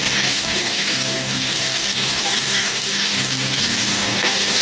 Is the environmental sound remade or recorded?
remade